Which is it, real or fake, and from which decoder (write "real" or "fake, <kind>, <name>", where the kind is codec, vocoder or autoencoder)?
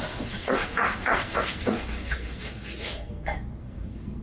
fake, codec, SNAC